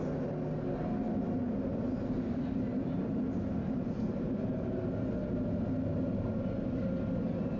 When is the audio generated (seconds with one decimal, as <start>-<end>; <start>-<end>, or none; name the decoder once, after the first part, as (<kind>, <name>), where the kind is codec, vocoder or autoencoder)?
1.7-4.2 (vocoder, BigVGAN v2)